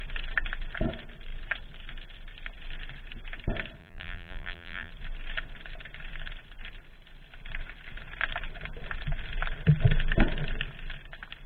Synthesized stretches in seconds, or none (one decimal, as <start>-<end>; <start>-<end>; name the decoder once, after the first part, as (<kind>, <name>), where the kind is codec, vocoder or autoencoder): 3.8-4.9 (vocoder, BigVGAN v2)